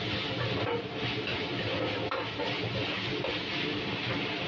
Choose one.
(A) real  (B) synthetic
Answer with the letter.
A